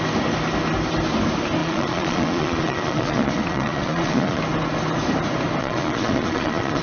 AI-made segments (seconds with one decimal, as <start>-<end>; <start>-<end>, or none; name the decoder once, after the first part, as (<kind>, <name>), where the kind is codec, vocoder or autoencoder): 1.6-4.4 (vocoder, Vocos); 5.6-6.8